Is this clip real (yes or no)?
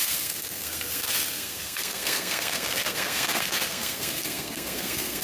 no